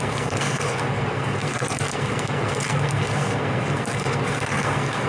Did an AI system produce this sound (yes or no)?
yes